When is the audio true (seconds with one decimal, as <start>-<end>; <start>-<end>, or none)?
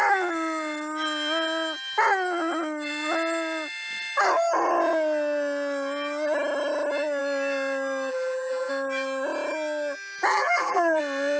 0.0-8.1; 8.7-10.3; 11.0-11.4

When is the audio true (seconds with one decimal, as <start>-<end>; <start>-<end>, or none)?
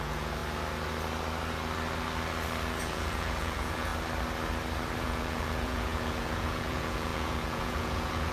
0.4-2.8; 3.9-5.0